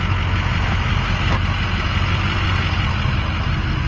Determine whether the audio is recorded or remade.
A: recorded